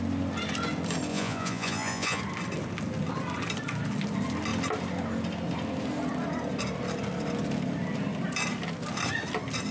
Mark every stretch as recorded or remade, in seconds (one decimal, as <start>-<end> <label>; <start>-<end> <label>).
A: 0.0-1.1 recorded; 1.1-2.2 remade; 2.2-9.7 recorded